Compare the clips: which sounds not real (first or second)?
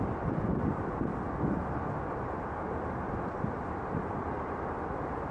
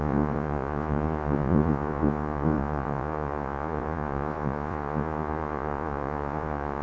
second